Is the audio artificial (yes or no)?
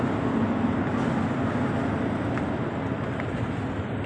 no